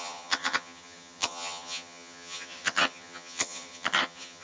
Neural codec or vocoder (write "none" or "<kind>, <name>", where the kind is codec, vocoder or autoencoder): vocoder, HiFi-GAN